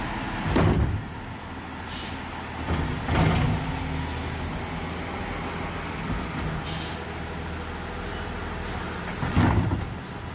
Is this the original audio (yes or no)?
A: yes